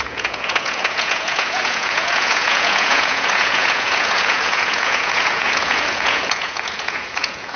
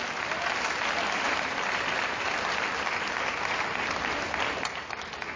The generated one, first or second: first